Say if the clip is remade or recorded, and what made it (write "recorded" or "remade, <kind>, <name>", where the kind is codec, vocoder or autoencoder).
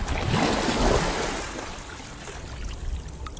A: recorded